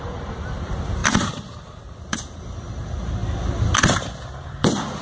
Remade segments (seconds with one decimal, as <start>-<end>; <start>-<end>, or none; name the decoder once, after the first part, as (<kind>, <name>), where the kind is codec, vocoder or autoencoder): 0.0-1.0 (vocoder, BigVGAN v2); 2.0-3.2; 4.3-5.0